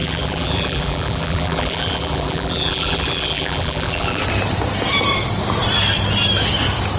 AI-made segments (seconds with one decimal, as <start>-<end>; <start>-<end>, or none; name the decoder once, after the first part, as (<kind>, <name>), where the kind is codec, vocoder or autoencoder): 0.0-4.2 (vocoder, BigVGAN v2)